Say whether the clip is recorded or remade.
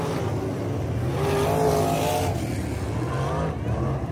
recorded